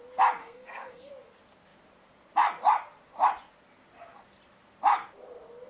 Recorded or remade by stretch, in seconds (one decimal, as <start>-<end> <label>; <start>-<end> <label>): 0.0-0.4 recorded; 0.4-1.1 remade; 1.1-5.7 recorded